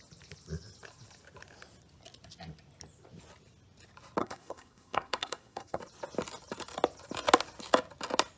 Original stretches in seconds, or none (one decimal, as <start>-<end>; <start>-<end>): 0.0-4.2; 5.8-8.4